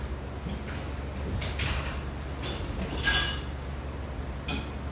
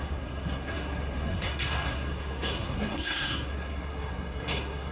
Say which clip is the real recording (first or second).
first